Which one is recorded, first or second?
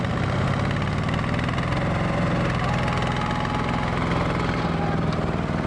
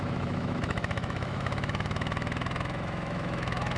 first